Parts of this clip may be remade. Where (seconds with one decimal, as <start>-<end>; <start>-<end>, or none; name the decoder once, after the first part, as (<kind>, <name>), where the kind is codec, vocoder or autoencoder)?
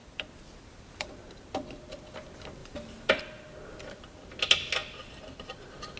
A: 0.0-1.1 (vocoder, BigVGAN v2); 2.6-3.2; 4.8-5.6